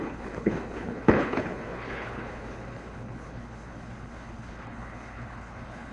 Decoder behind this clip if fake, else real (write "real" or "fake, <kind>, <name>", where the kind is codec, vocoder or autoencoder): fake, codec, HILCodec